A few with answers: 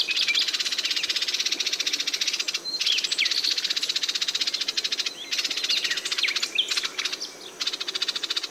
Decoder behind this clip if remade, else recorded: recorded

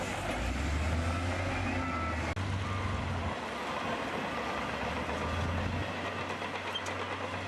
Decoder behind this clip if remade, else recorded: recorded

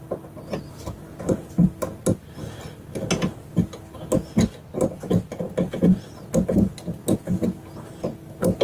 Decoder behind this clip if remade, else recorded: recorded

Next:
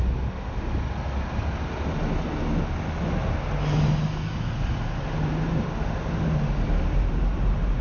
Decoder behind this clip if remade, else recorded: recorded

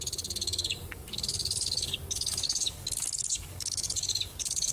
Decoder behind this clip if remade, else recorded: remade, codec, DAC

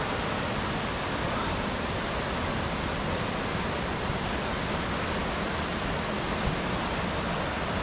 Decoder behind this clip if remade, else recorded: recorded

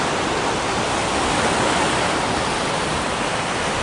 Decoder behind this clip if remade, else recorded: recorded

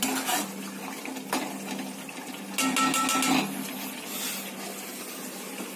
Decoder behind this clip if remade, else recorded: recorded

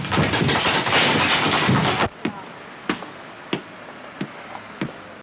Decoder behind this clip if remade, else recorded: recorded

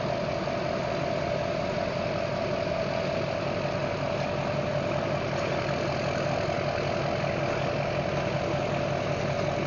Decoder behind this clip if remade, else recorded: recorded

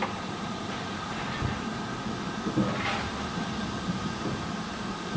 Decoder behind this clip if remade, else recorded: recorded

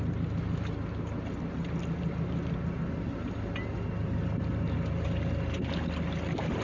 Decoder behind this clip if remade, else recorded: recorded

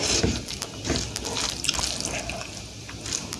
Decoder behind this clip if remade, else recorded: recorded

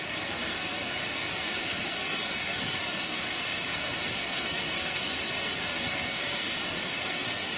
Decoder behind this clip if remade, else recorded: remade, codec, SNAC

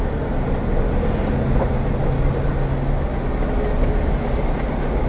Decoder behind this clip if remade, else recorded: recorded